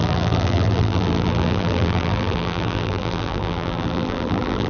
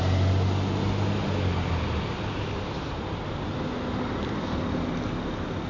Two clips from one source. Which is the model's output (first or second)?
first